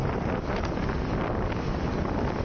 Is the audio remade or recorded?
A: recorded